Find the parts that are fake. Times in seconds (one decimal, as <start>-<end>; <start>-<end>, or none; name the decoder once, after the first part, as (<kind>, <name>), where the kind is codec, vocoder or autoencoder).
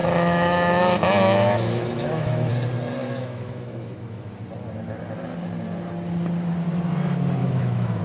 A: 0.0-2.5 (autoencoder, DAC-VAE); 3.0-4.3; 7.4-8.0